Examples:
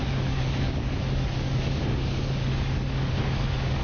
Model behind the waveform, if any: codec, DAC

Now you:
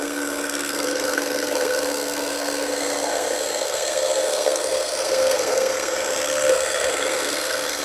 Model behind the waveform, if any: codec, SNAC